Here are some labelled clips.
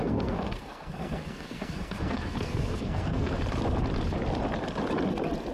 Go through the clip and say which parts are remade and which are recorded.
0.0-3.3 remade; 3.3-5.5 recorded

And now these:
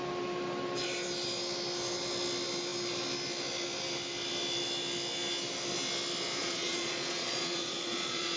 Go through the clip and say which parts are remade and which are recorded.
0.0-6.4 recorded; 6.4-8.4 remade

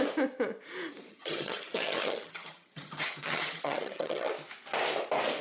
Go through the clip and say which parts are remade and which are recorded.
0.0-1.1 recorded; 1.1-4.3 remade; 4.3-5.4 recorded

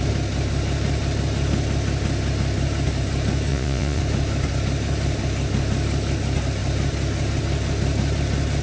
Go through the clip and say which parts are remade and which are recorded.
0.0-3.5 recorded; 3.5-4.0 remade; 4.0-8.6 recorded

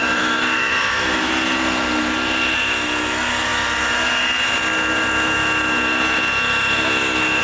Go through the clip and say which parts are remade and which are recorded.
0.0-1.3 remade; 1.3-7.4 recorded

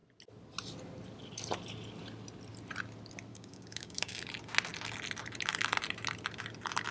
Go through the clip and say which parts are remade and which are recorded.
0.0-3.3 recorded; 3.3-4.3 remade; 4.3-6.9 recorded

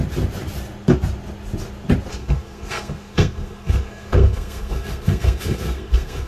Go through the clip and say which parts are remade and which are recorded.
0.0-2.1 recorded; 2.1-6.3 remade

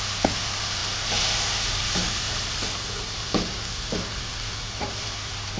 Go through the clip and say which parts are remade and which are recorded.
0.0-5.6 recorded